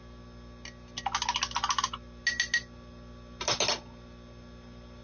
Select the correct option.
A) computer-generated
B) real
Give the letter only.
B